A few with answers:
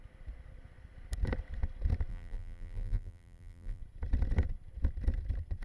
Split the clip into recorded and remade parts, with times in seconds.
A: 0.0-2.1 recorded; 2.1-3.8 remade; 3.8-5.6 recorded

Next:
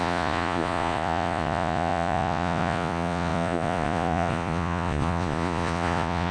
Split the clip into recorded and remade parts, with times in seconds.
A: 0.0-6.3 remade

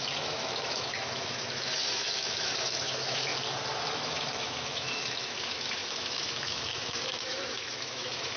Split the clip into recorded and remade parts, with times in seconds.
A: 0.0-3.3 remade; 3.3-3.9 recorded; 3.9-8.4 remade